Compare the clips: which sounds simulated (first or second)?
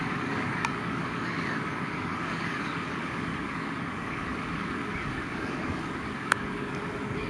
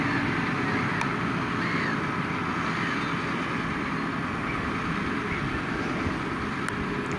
first